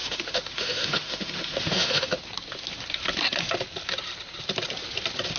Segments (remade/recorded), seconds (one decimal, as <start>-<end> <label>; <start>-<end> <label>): 0.0-2.2 remade; 2.2-5.4 recorded